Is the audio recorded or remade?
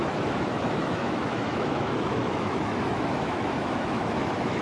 remade